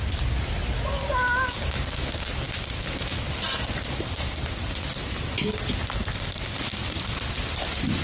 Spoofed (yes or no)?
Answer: no